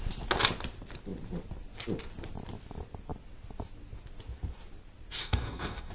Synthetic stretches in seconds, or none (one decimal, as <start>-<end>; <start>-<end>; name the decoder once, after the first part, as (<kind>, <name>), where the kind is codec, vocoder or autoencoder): 5.2-5.9 (codec, DAC)